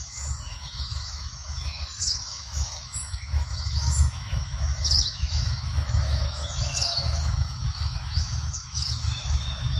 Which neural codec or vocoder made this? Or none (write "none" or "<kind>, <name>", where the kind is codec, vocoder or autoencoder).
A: autoencoder, DAC-VAE